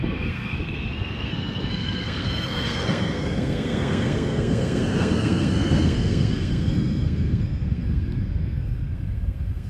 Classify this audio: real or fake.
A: fake